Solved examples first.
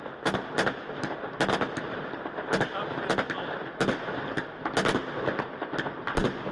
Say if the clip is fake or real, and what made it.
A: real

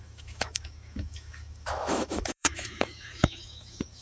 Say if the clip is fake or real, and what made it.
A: fake, autoencoder, DAC-VAE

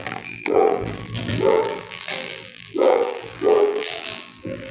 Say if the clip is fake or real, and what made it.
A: fake, vocoder, BigVGAN v2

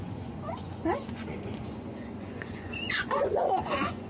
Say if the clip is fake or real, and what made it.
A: fake, vocoder, Vocos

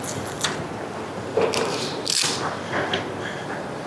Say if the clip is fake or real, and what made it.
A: real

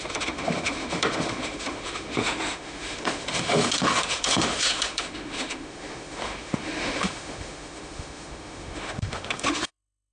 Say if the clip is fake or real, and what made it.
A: fake, autoencoder, DAC-VAE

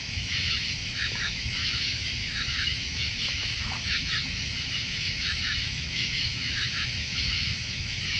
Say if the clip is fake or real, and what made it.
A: fake, autoencoder, DAC-VAE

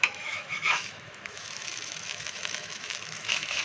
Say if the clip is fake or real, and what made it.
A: fake, autoencoder, DAC-VAE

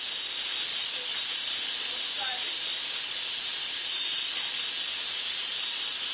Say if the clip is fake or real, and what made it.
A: real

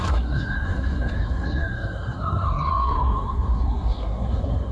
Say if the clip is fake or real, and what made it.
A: fake, codec, SNAC